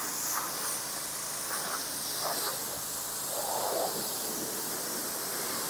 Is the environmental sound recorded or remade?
recorded